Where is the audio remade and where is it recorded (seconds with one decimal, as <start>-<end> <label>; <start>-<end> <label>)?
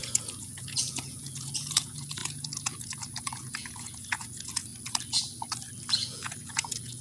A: 0.0-4.7 remade; 4.7-5.9 recorded; 5.9-7.0 remade